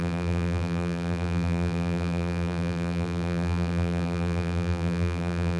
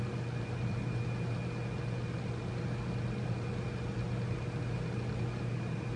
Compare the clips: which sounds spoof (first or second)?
first